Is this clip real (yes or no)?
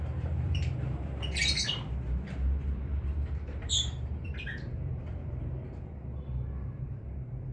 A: no